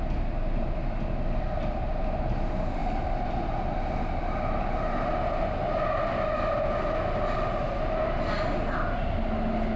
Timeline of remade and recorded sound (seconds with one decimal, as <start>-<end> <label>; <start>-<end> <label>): 0.0-9.8 recorded